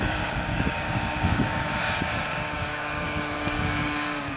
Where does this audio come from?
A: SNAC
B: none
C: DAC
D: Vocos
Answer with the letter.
C